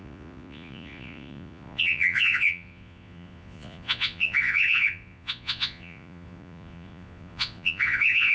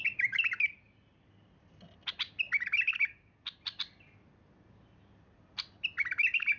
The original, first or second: second